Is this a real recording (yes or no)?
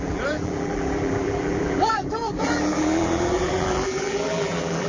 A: no